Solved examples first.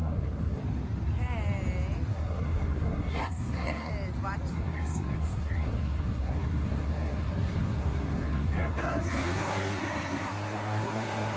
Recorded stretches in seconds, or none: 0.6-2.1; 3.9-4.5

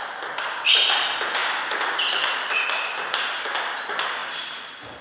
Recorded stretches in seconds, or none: 0.0-5.0

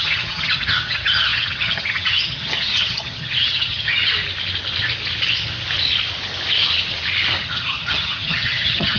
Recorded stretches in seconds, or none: 4.1-7.4

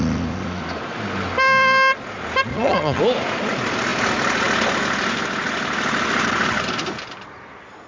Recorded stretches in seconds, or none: 0.0-2.5; 3.0-7.9

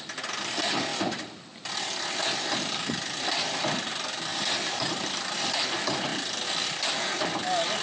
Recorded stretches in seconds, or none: 0.0-4.3; 5.4-7.8

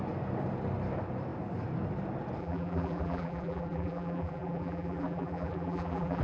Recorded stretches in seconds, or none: 0.0-2.4

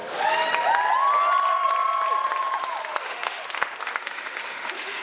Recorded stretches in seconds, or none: 0.0-3.0; 3.4-4.0